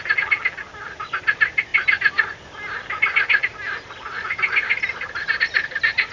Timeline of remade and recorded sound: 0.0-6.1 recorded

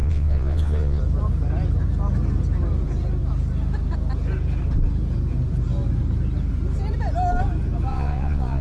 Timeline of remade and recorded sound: 0.0-1.0 remade; 1.0-7.9 recorded; 7.9-8.6 remade

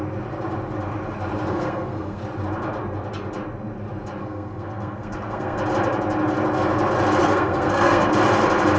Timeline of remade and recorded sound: 0.0-1.5 recorded; 1.5-2.2 remade; 2.2-4.2 recorded; 4.2-5.6 remade; 5.6-7.2 recorded; 7.2-8.1 remade; 8.1-8.8 recorded